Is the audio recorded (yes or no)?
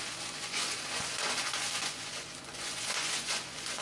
no